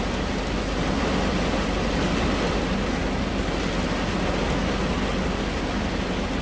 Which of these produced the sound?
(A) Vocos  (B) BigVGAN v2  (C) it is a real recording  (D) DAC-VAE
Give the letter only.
C